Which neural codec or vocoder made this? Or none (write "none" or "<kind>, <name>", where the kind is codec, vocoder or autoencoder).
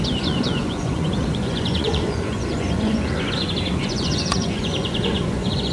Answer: vocoder, Vocos